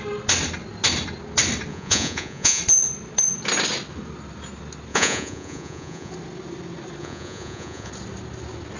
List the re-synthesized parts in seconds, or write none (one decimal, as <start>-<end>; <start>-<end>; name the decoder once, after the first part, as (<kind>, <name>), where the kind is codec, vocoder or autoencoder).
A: 1.7-2.6 (vocoder, Vocos); 4.9-6.1; 7.0-7.9